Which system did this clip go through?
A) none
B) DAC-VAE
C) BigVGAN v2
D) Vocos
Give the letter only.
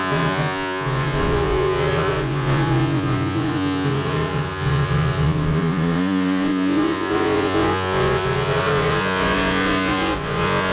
D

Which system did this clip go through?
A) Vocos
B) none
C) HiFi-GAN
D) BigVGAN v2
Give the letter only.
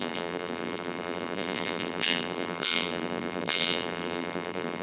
D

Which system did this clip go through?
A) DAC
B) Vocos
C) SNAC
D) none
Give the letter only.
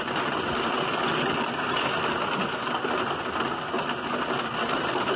D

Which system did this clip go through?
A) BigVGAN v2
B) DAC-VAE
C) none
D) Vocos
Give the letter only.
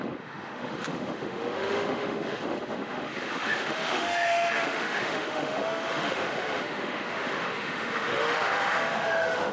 B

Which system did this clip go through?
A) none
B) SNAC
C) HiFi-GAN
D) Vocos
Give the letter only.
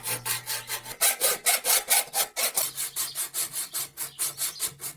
A